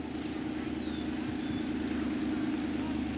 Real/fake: real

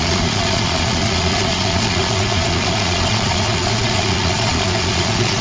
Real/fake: fake